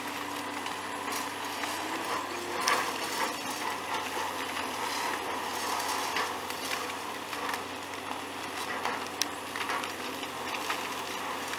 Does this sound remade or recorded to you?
recorded